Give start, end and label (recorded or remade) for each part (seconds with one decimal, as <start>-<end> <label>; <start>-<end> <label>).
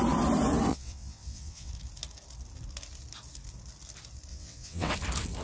0.0-0.7 recorded; 0.7-1.7 remade; 1.7-4.3 recorded; 4.3-4.9 remade; 4.9-5.4 recorded